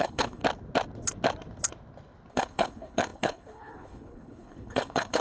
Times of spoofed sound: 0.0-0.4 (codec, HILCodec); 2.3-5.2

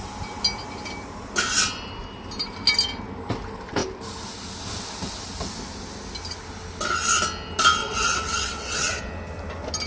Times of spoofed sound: 7.8-9.0 (vocoder, WaveNeXt)

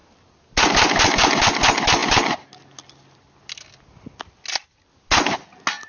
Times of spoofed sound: none

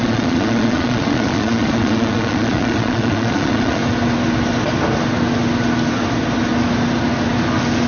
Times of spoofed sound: 0.0-3.8 (vocoder, Vocos)

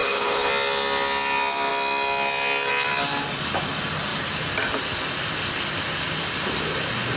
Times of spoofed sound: 0.0-0.5 (codec, HILCodec)

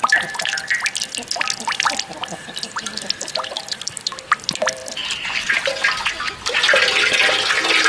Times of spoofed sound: none

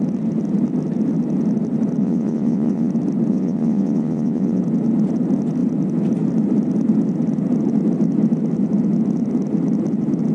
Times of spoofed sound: 2.0-2.9 (vocoder, WaveNeXt); 3.3-4.6

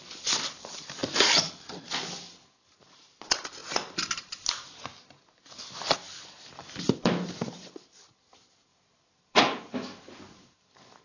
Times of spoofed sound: 1.0-1.5 (vocoder, BigVGAN v2); 8.7-9.4